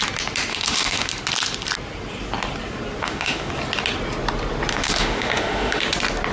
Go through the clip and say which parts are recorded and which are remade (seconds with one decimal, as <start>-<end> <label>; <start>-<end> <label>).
0.0-0.5 recorded; 0.5-1.1 remade; 1.1-3.0 recorded; 3.0-3.5 remade; 3.5-4.7 recorded; 4.7-5.8 remade; 5.8-6.3 recorded